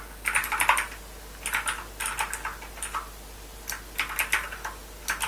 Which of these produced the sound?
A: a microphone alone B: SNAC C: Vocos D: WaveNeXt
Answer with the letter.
A